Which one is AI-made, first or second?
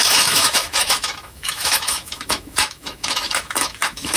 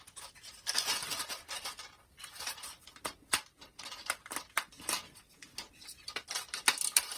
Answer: first